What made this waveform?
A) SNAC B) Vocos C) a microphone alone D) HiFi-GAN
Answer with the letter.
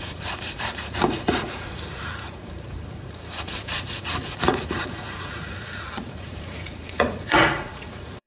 B